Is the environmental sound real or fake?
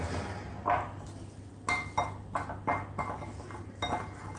real